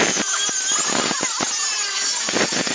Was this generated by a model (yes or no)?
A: no